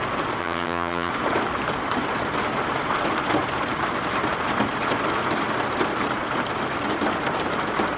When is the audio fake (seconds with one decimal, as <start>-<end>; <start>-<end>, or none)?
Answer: 0.4-1.1